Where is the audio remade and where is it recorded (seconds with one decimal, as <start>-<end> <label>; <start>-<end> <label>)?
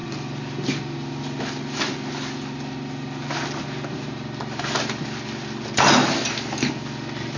0.0-7.4 recorded